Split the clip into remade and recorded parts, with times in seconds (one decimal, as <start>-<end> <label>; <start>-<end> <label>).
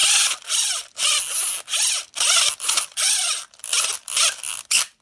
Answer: 0.0-5.0 recorded